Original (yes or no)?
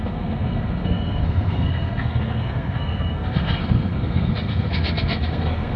no